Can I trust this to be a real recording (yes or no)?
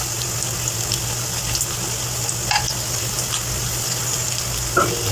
yes